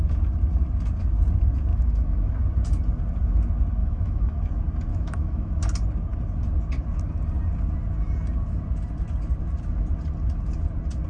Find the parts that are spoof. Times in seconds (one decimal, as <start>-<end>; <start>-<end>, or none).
1.7-2.3; 3.8-4.4; 4.9-5.6